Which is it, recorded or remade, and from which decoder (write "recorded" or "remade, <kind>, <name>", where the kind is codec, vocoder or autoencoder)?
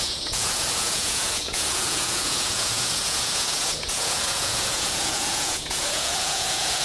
remade, vocoder, Vocos